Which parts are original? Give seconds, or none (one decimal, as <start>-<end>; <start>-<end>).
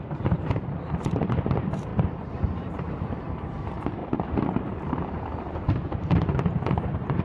0.0-1.9; 3.1-4.0